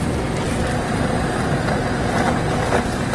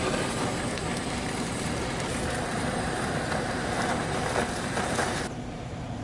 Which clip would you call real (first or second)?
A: first